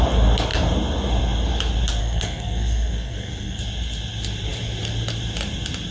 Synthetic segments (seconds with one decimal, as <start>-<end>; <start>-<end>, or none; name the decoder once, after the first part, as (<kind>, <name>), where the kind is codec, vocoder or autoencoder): 2.0-3.6 (codec, SNAC)